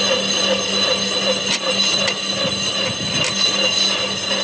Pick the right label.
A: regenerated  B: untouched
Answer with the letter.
B